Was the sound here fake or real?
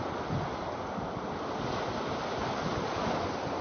real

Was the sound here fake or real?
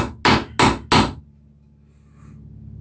real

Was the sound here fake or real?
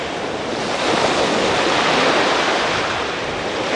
fake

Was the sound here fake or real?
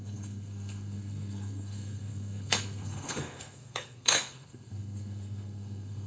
fake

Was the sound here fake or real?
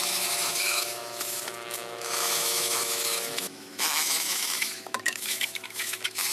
fake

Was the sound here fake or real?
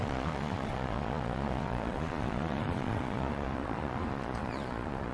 fake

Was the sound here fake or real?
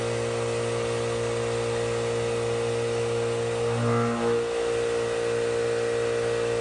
real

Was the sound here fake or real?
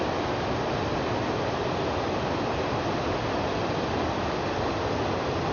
real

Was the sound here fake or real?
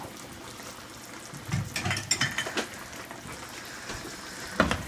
real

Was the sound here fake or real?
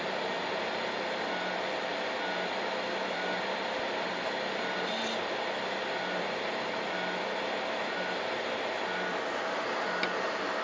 real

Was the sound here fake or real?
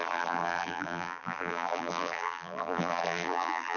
fake